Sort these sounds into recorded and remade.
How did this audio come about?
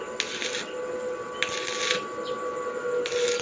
recorded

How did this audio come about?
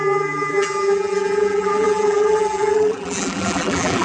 remade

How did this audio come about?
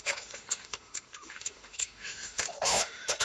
remade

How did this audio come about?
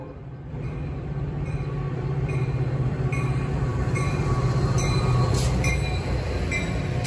remade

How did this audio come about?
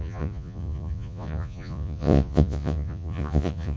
remade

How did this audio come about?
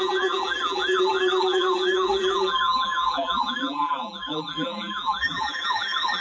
remade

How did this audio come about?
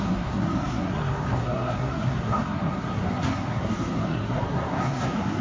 remade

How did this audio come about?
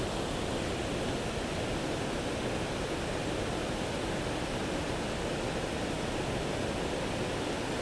recorded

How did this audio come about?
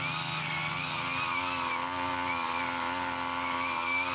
recorded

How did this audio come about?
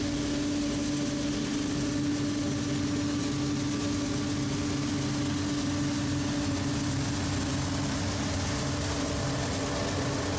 recorded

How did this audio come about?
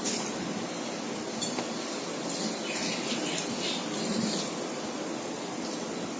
recorded